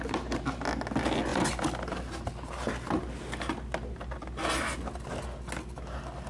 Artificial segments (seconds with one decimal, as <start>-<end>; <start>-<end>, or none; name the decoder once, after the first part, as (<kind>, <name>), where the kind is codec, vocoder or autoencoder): none